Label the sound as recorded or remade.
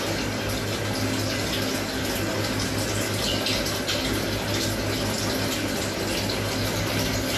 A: recorded